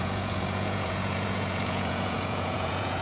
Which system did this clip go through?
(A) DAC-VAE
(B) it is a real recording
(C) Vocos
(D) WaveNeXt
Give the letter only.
C